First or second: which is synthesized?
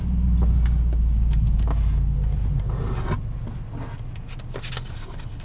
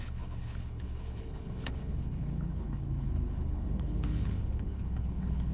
second